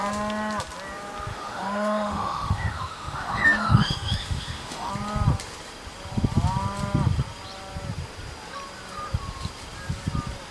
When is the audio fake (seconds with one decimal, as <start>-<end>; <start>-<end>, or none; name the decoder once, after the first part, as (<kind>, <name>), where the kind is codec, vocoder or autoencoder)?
1.3-4.9 (autoencoder, DAC-VAE)